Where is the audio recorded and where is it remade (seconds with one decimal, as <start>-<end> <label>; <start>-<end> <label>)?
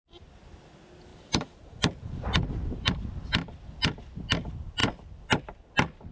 0.0-1.1 recorded; 1.1-2.9 remade; 2.9-6.1 recorded